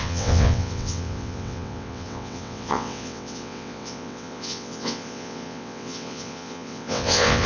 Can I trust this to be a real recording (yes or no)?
no